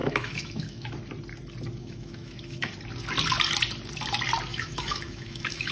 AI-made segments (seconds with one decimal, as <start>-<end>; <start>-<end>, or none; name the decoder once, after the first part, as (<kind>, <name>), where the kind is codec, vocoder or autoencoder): 0.0-0.9 (autoencoder, DAC-VAE); 1.8-2.7; 4.5-5.7